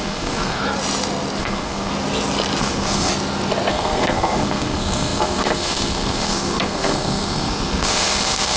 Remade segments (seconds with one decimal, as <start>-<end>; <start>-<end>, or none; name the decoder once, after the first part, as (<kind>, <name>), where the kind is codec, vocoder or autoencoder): 0.0-0.6 (codec, SNAC); 1.4-1.9; 2.6-3.1; 3.7-8.6